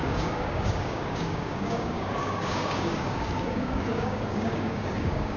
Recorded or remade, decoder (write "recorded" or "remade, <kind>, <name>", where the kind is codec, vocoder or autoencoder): remade, codec, DAC